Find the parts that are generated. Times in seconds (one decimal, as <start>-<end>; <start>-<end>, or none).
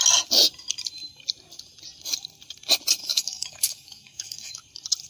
3.0-4.6